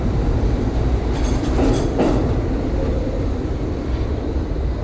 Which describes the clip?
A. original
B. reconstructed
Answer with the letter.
B